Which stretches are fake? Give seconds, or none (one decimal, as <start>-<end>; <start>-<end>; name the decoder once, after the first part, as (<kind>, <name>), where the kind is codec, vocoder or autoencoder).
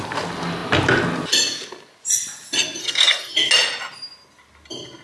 2.8-3.3 (codec, SNAC)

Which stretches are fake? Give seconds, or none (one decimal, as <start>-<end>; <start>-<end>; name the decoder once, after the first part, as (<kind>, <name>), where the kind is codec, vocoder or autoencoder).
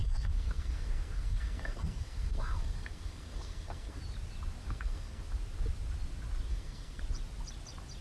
0.0-4.0 (codec, SNAC); 4.6-5.2; 6.5-7.0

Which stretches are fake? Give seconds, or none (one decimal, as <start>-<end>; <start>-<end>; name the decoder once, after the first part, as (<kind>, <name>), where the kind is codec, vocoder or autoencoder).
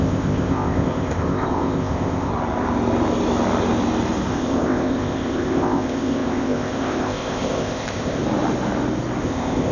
0.0-2.3 (codec, ZipCodec); 4.3-8.2; 9.2-9.7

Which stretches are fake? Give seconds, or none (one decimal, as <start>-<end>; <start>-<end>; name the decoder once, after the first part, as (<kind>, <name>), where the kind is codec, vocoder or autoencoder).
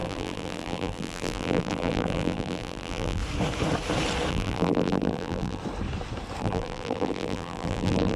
0.0-3.2 (vocoder, BigVGAN v2); 4.3-5.6; 6.4-8.2